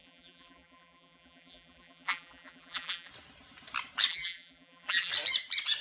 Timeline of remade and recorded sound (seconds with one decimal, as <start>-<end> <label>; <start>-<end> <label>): 0.0-3.1 remade; 3.1-4.1 recorded; 4.1-5.1 remade; 5.1-5.8 recorded